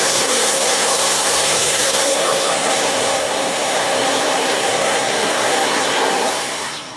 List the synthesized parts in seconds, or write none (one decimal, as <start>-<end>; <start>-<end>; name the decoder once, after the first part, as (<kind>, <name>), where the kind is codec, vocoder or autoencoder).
0.0-7.0 (codec, SNAC)